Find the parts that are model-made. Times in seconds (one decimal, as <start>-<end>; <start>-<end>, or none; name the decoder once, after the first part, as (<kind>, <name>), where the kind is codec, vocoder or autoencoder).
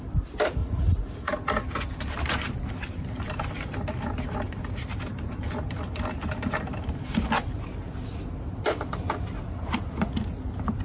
0.6-1.3 (vocoder, Vocos)